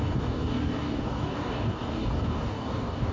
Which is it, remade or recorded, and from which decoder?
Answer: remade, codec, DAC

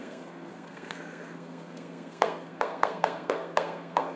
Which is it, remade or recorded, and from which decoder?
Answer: remade, codec, SNAC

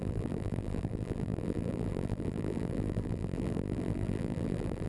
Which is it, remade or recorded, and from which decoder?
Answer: remade, vocoder, BigVGAN v2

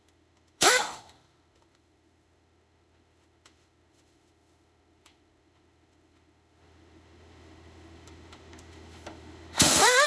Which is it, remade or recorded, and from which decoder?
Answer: remade, autoencoder, DAC-VAE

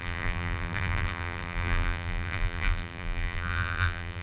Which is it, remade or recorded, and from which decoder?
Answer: remade, vocoder, BigVGAN v2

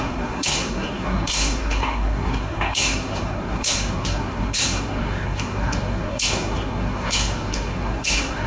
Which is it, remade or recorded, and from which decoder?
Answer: remade, codec, SNAC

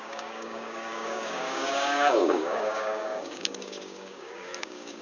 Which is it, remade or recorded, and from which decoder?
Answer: remade, codec, DAC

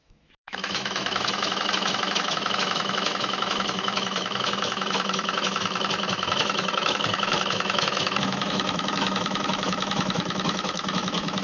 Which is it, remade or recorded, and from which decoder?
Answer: remade, autoencoder, DAC-VAE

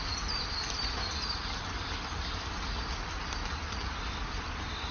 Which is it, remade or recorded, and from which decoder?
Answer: recorded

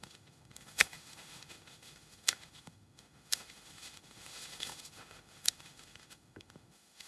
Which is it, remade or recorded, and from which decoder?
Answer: remade, autoencoder, DAC-VAE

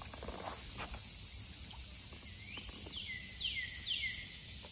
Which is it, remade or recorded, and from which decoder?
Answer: recorded